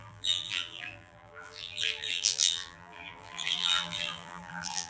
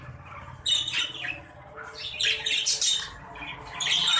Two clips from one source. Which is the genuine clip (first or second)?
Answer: second